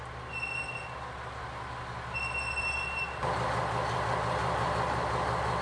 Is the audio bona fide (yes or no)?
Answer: yes